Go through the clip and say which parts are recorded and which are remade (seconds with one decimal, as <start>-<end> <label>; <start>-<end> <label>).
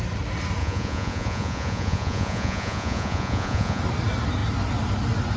0.0-0.6 recorded; 0.6-3.8 remade; 3.8-5.4 recorded